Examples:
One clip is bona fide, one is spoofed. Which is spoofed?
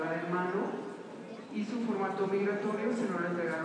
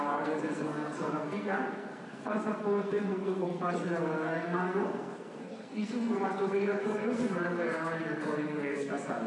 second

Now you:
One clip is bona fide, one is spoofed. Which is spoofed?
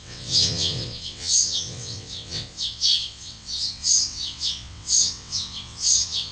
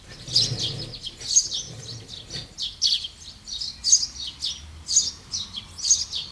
first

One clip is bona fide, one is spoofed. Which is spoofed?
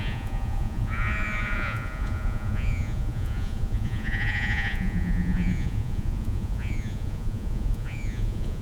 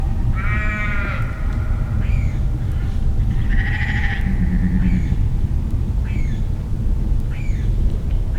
first